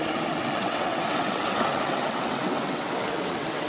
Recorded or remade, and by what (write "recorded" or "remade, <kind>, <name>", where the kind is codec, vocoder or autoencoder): remade, vocoder, WaveNeXt